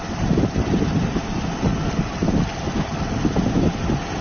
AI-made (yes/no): no